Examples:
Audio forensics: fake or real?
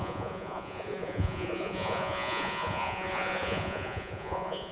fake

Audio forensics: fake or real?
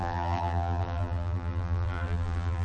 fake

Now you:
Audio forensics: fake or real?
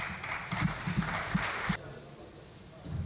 real